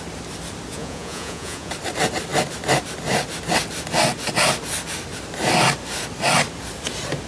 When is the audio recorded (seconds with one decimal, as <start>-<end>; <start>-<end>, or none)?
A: 0.0-0.7; 1.7-7.3